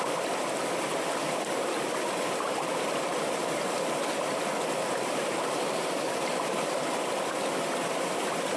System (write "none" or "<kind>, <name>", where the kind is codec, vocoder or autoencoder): none